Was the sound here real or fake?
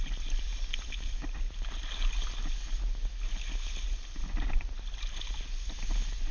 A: real